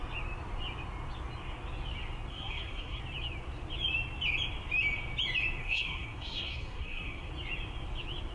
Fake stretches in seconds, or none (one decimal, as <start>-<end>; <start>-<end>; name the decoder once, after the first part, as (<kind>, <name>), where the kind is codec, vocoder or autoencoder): 2.3-3.0 (codec, SNAC); 5.6-7.3